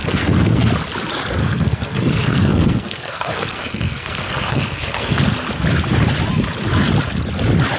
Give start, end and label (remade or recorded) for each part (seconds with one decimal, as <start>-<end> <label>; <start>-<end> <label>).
0.0-0.7 remade; 0.7-1.4 recorded; 1.4-5.2 remade; 5.2-7.8 recorded